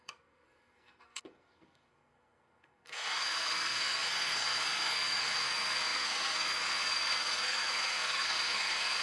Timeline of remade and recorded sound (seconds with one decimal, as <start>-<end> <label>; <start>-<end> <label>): 0.0-9.0 remade